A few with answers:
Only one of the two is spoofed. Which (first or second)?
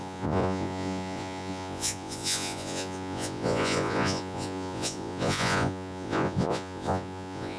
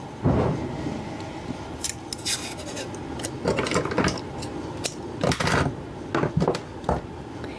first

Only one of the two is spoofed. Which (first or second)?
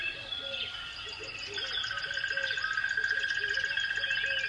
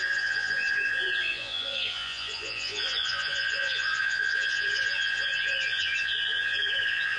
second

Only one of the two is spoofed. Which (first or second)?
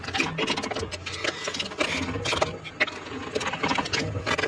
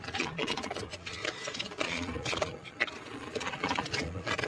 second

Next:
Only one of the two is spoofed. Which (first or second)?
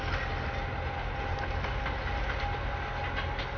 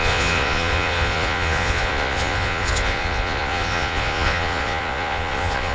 second